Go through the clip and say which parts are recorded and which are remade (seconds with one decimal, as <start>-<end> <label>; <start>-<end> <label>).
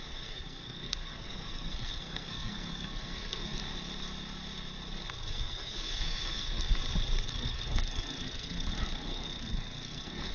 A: 0.0-3.6 remade; 3.6-5.3 recorded; 5.3-6.8 remade; 6.8-7.3 recorded; 7.3-10.3 remade